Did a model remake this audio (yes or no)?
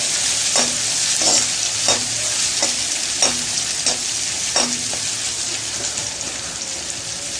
no